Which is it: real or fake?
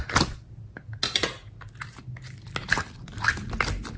real